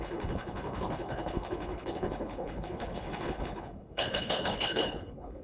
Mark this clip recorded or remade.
remade